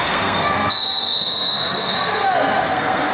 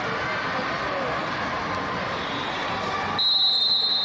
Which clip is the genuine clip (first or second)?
second